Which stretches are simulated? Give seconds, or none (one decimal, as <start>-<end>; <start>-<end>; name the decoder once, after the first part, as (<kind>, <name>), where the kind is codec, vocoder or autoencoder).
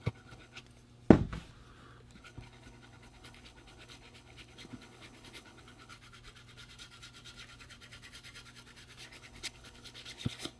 0.0-0.6 (codec, HILCodec); 2.2-5.9; 9.0-10.6